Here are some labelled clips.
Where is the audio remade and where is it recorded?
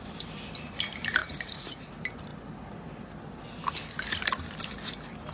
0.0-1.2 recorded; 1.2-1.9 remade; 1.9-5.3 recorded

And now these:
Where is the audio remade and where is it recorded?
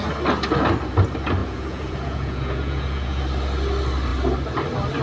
0.0-1.4 recorded; 1.4-3.2 remade; 3.2-5.0 recorded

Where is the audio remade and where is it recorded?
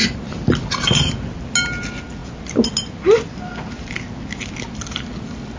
0.0-5.6 recorded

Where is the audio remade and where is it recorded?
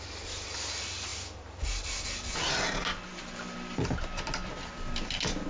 0.0-5.5 recorded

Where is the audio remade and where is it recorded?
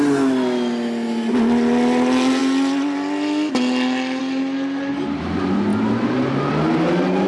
0.0-7.3 recorded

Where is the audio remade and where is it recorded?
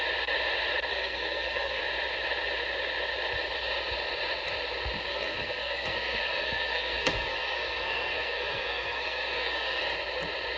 0.0-0.9 recorded; 0.9-1.8 remade; 1.8-5.1 recorded; 5.1-9.8 remade; 9.8-10.6 recorded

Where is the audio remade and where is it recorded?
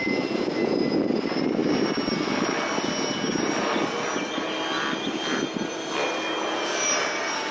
0.0-7.5 recorded